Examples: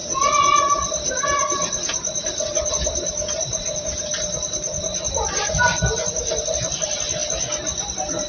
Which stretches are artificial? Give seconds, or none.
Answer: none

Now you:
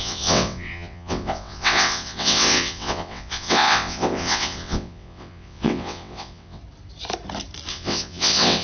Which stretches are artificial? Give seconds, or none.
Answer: 0.0-6.6 (vocoder, WaveNeXt); 7.7-8.6

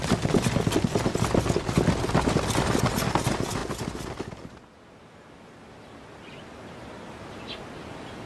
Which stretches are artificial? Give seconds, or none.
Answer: none

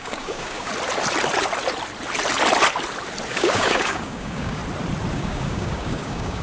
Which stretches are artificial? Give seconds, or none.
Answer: 0.0-0.7 (codec, DAC); 3.3-4.6; 5.1-6.4

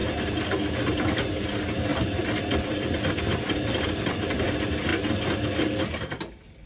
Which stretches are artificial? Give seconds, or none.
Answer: 0.0-0.5 (vocoder, BigVGAN v2); 1.9-4.4

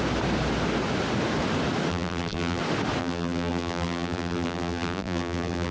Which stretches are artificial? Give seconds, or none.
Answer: 1.9-2.6 (vocoder, BigVGAN v2); 3.0-5.7